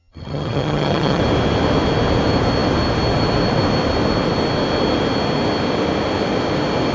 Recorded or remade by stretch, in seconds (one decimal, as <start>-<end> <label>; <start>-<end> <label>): 0.0-1.2 remade; 1.2-6.9 recorded